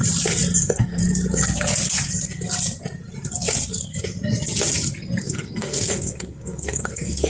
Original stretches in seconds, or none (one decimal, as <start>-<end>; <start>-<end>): 0.0-0.6; 1.0-5.2